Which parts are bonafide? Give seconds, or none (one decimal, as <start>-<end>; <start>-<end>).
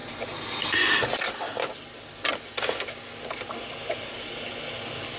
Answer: 0.0-5.2